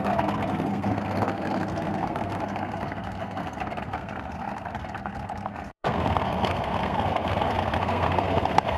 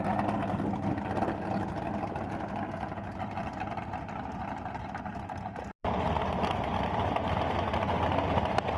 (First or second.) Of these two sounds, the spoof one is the first